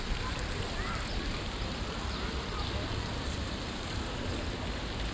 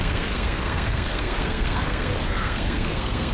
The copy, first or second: second